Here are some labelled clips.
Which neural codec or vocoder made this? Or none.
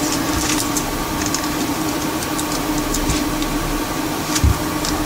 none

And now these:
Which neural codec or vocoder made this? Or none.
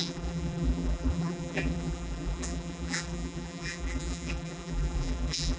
vocoder, BigVGAN v2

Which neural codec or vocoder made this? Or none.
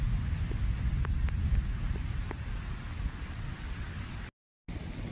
none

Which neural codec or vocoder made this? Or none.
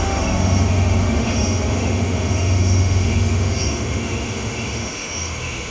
autoencoder, DAC-VAE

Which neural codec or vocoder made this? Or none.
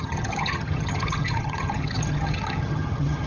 vocoder, HiFi-GAN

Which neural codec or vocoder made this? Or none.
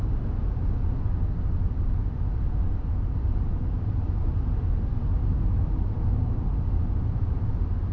none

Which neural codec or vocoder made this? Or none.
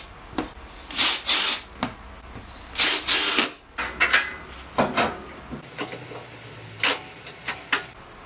none